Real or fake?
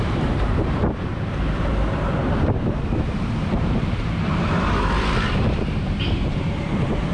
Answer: fake